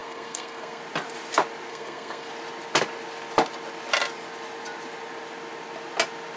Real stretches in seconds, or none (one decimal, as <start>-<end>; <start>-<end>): 0.8-1.7; 2.3-6.4